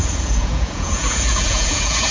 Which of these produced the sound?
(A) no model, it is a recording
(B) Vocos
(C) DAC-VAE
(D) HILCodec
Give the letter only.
B